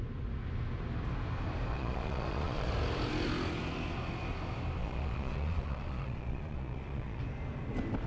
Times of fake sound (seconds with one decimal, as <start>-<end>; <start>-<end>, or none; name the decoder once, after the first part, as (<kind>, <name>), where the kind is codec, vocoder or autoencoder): 1.7-2.7 (vocoder, Vocos); 4.8-7.2